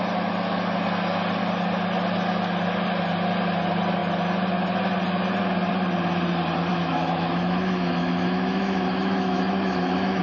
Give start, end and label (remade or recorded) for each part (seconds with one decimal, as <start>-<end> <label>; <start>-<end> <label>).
0.0-6.7 recorded; 6.7-10.2 remade